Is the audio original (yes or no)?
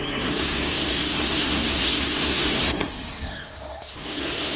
no